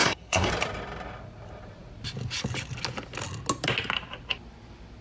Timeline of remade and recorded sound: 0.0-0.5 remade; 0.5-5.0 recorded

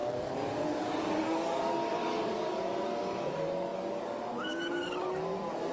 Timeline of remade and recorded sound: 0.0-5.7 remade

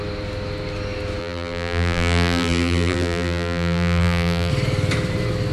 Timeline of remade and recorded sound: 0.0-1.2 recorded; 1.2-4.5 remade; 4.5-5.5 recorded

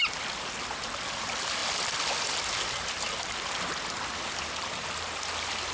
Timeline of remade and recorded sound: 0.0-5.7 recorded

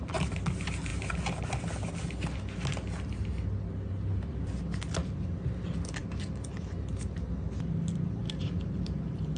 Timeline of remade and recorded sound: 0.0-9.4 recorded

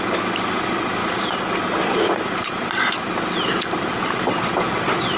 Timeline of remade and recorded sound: 0.0-1.0 recorded; 1.0-4.1 remade; 4.1-5.2 recorded